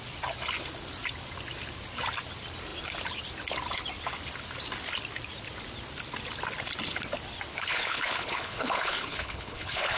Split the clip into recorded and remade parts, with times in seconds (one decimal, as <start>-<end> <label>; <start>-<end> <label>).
0.0-7.5 recorded; 7.5-10.0 remade